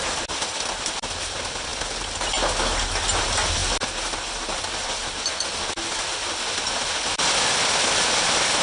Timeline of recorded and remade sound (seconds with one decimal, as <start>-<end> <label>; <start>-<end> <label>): 0.0-8.6 recorded